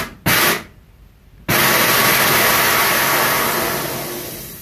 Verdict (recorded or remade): recorded